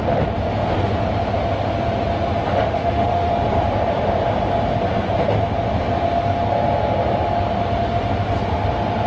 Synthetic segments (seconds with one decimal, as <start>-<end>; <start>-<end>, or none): 2.5-3.3